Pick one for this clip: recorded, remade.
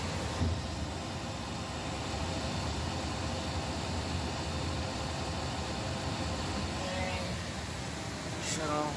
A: recorded